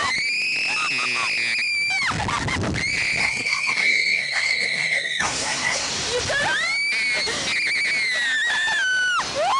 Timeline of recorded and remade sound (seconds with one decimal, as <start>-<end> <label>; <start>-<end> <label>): 0.0-3.2 recorded; 3.2-5.9 remade; 5.9-9.6 recorded